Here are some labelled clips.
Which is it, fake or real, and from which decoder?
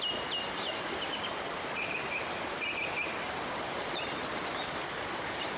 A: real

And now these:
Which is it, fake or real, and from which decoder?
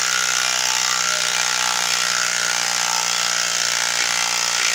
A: real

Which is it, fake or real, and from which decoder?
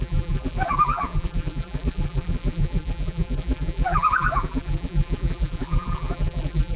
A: fake, vocoder, BigVGAN v2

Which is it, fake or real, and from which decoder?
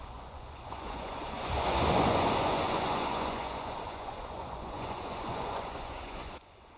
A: fake, vocoder, Vocos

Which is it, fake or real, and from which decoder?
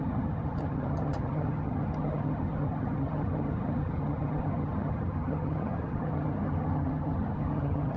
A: fake, vocoder, HiFi-GAN